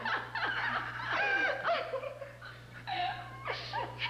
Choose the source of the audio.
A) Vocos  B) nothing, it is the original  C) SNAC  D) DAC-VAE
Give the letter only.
B